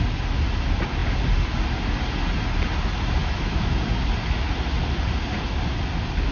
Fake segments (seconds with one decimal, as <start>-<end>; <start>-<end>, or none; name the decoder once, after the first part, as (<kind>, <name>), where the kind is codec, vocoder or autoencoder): 3.2-3.8 (autoencoder, DAC-VAE)